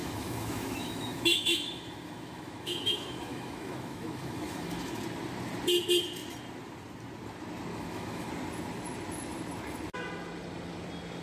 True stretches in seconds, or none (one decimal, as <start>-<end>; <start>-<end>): 5.0-7.7; 8.3-11.2